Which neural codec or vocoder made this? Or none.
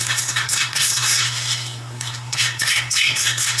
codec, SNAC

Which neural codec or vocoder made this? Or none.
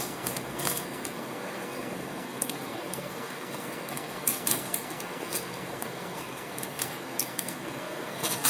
codec, SNAC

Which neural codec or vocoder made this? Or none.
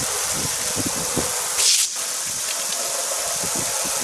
none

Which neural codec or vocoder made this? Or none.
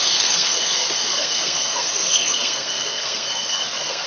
codec, SNAC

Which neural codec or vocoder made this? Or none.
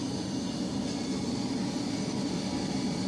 none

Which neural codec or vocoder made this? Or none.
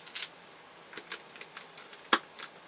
none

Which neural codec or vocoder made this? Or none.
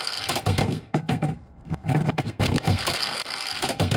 codec, SNAC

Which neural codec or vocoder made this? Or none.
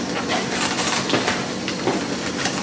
none